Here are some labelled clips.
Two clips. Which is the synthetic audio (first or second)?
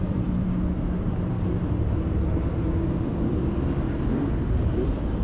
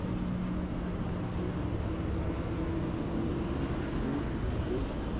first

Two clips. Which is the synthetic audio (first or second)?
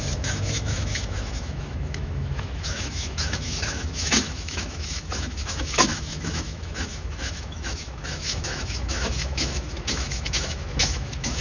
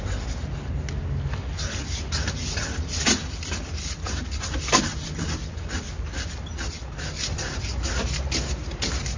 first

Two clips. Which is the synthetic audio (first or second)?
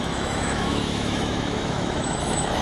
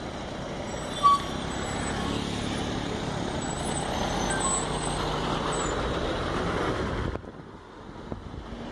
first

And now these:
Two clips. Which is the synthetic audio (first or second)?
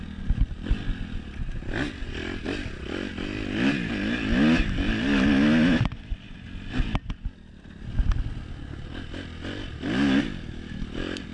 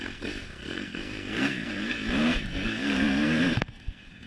second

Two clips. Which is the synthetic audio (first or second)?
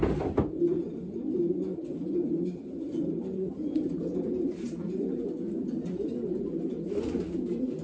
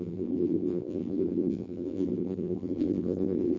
second